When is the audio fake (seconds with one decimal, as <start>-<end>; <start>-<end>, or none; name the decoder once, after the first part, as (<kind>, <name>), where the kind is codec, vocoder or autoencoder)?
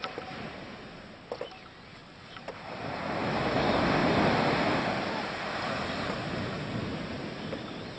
none